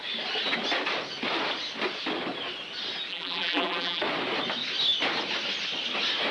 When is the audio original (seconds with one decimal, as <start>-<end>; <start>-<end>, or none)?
0.0-3.1; 4.0-6.3